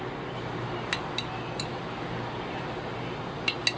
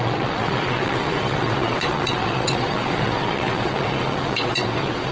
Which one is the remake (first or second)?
second